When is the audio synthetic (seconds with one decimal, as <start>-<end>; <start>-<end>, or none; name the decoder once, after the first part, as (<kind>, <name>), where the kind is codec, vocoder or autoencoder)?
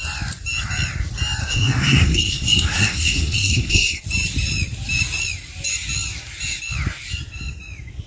1.4-4.0 (codec, SNAC)